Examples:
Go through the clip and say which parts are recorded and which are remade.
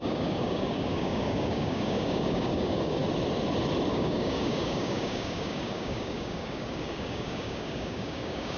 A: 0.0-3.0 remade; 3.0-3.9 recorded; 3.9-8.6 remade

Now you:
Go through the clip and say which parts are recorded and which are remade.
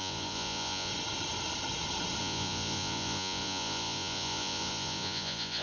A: 0.0-0.9 remade; 0.9-2.2 recorded; 2.2-5.6 remade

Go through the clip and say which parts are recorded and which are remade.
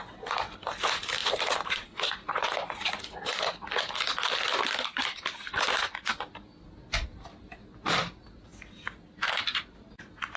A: 0.0-10.4 recorded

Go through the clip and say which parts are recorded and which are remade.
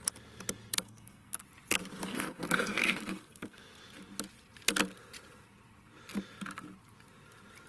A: 0.0-0.7 recorded; 0.7-1.4 remade; 1.4-2.1 recorded; 2.1-3.8 remade; 3.8-7.7 recorded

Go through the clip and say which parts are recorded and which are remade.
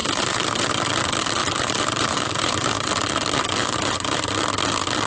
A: 0.0-0.8 remade; 0.8-1.4 recorded; 1.4-2.9 remade; 2.9-3.6 recorded; 3.6-4.3 remade; 4.3-5.1 recorded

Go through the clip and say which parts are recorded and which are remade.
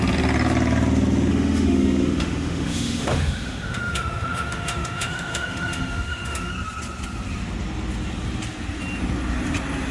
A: 0.0-1.3 recorded; 1.3-6.5 remade; 6.5-9.9 recorded